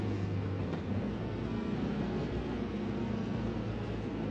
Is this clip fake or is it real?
fake